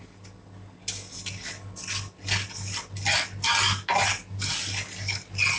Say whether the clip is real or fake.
real